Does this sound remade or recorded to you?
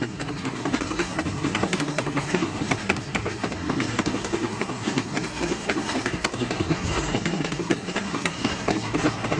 remade